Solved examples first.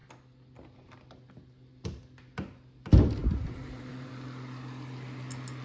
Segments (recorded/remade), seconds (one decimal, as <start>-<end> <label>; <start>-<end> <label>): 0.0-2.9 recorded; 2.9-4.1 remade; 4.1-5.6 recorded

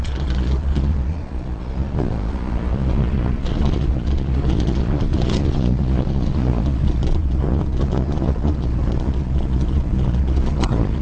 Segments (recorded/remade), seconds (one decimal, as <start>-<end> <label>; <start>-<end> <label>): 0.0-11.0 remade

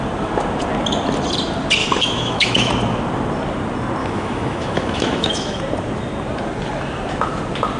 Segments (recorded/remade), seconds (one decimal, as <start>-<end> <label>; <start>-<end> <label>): 0.0-1.8 recorded; 1.8-2.7 remade; 2.7-4.0 recorded; 4.0-5.6 remade; 5.6-7.8 recorded